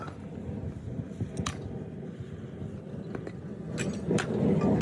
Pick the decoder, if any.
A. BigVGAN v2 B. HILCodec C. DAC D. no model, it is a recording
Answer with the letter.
D